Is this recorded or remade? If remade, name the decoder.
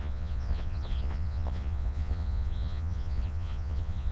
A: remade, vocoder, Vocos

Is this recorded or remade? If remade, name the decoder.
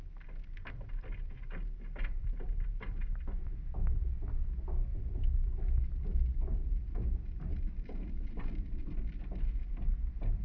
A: recorded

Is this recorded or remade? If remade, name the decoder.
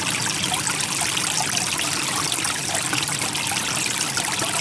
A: recorded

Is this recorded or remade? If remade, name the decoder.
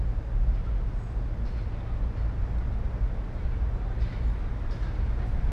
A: recorded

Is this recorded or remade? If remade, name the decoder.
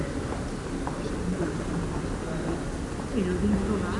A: recorded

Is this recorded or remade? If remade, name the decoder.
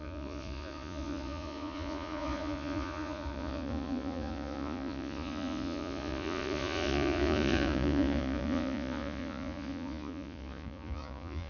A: remade, vocoder, Vocos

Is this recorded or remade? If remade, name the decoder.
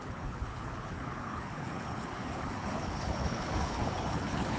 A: remade, codec, HILCodec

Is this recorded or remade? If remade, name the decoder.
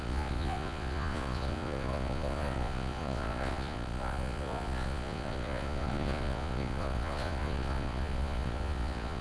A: remade, vocoder, Vocos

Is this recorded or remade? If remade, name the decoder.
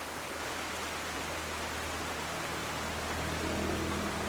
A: recorded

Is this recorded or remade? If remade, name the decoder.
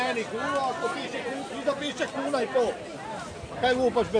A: recorded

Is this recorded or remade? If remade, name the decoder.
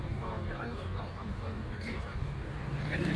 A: remade, codec, DAC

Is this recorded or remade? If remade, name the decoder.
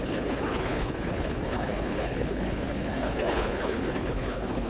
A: remade, codec, HILCodec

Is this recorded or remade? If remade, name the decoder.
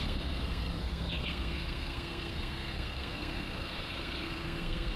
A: remade, codec, SNAC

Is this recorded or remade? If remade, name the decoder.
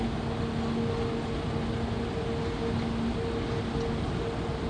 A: recorded